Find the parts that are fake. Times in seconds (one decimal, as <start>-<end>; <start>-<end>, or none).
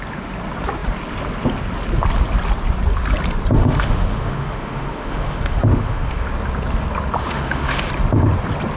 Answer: 3.6-6.3; 7.2-7.9